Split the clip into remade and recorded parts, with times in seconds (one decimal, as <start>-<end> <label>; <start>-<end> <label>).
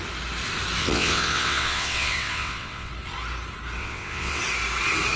0.0-0.8 recorded; 0.8-2.9 remade; 2.9-3.8 recorded; 3.8-4.4 remade; 4.4-5.2 recorded